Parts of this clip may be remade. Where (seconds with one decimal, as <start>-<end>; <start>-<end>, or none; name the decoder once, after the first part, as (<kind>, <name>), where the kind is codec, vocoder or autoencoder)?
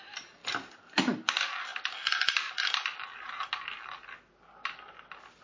0.4-1.0 (vocoder, BigVGAN v2)